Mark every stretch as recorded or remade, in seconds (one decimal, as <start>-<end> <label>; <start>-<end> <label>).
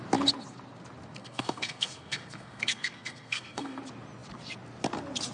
0.0-1.2 recorded; 1.2-3.8 remade; 3.8-5.3 recorded